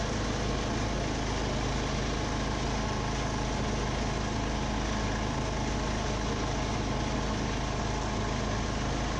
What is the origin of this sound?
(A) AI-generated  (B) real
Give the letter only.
B